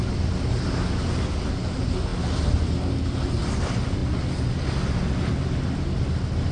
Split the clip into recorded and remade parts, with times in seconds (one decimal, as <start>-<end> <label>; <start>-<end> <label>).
0.0-6.5 recorded